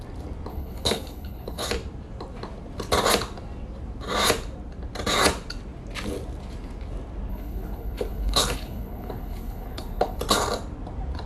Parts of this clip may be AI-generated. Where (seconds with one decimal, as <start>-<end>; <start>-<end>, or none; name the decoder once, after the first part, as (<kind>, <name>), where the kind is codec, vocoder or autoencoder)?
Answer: 0.5-1.7 (codec, HILCodec); 7.3-10.2